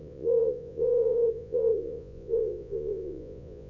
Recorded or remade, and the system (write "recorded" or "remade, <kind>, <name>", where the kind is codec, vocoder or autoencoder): remade, vocoder, Vocos